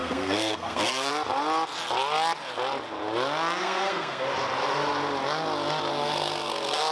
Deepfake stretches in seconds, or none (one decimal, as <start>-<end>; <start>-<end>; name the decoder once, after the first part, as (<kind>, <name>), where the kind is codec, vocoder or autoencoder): 0.0-1.1 (codec, SNAC); 3.6-4.2; 5.9-6.9